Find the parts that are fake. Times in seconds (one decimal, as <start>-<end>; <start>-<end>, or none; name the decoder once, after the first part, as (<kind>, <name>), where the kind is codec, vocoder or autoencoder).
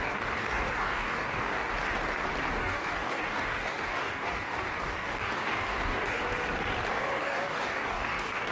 0.0-1.7 (codec, DAC); 2.5-6.2; 6.9-8.5